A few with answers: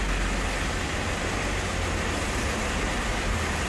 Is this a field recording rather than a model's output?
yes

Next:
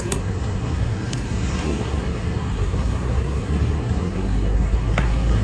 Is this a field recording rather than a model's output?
no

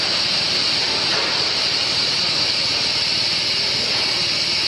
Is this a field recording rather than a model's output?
yes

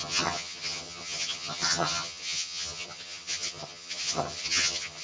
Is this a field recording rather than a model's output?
no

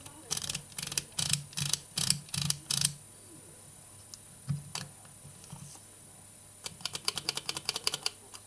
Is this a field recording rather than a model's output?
yes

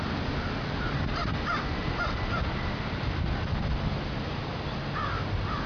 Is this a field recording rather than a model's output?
yes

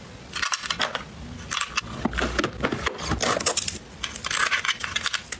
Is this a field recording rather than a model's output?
yes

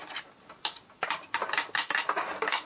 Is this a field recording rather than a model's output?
yes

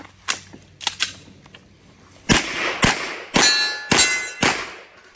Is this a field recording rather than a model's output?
yes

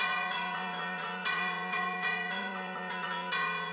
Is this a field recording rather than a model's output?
no